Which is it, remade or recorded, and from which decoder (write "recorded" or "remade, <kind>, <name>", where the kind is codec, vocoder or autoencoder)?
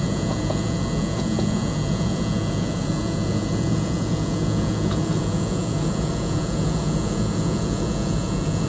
remade, vocoder, Vocos